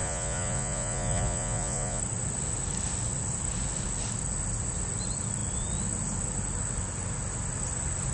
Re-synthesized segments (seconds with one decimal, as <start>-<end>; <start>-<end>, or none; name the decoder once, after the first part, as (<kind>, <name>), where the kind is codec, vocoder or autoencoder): 0.0-2.0 (vocoder, Vocos)